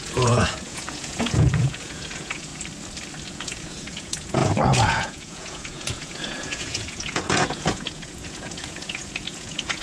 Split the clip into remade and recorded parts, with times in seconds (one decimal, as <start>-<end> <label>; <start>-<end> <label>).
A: 0.0-2.5 remade; 2.5-3.3 recorded; 3.3-9.8 remade

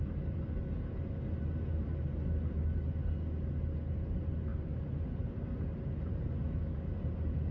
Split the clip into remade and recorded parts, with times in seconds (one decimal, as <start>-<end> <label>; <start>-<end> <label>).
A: 0.0-7.5 recorded

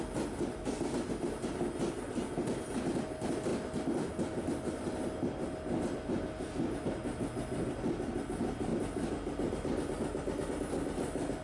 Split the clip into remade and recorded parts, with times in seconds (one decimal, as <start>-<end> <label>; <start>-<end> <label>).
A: 0.0-11.4 recorded